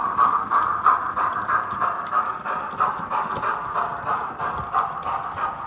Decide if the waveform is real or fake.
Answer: real